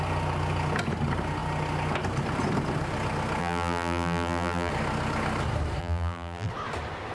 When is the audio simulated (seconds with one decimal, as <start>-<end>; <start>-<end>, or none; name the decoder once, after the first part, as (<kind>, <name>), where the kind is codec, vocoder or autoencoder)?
3.4-4.7 (vocoder, BigVGAN v2); 5.8-6.5